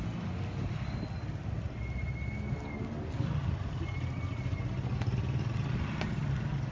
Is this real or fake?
real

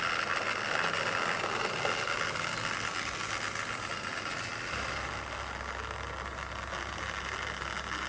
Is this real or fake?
real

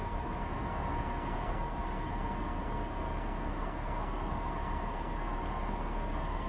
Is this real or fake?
fake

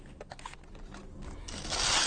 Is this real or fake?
real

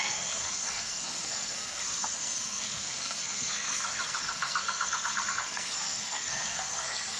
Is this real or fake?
fake